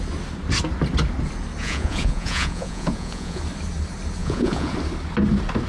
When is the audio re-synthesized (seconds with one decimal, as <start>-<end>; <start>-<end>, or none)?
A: 1.6-3.4; 4.2-4.7